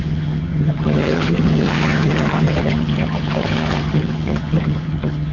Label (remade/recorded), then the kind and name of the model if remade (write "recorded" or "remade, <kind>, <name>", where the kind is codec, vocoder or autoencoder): remade, vocoder, HiFi-GAN